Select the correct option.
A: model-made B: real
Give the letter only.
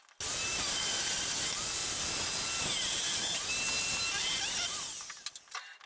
B